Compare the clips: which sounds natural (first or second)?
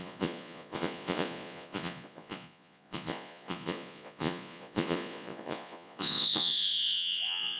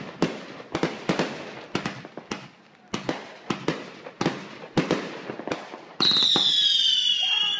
second